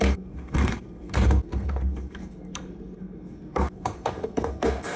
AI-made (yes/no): yes